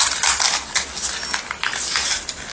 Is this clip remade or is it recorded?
recorded